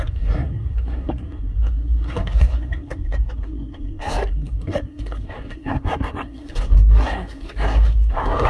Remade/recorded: remade